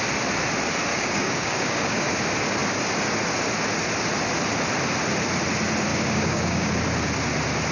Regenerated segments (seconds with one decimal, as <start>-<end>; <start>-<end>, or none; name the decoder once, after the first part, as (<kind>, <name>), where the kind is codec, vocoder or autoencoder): 0.9-2.1 (codec, DAC); 5.9-6.7